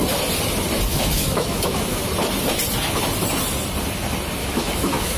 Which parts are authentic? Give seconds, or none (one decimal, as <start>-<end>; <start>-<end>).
0.0-0.9; 2.0-4.4